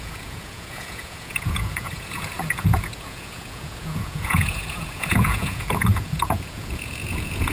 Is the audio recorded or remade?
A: remade